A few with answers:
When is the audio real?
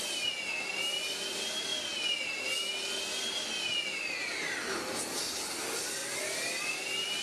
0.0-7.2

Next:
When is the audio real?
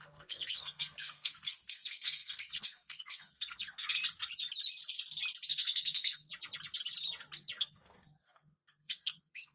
4.0-5.5; 6.3-7.6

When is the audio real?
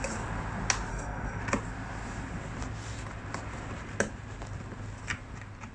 0.0-0.9; 1.4-5.7